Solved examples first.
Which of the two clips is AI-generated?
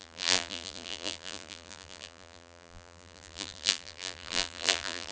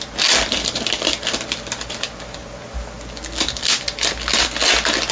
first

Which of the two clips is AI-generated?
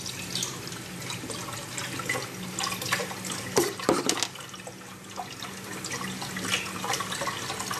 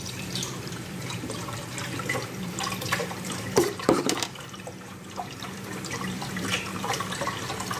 second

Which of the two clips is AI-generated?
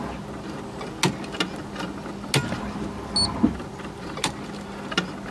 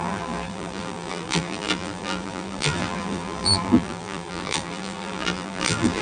second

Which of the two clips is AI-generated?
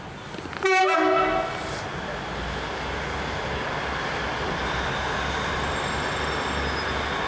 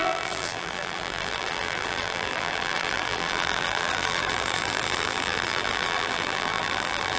second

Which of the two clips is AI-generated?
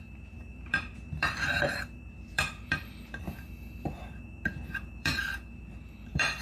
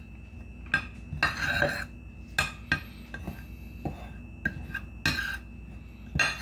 first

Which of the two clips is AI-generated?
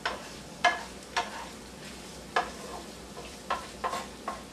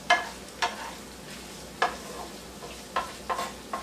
first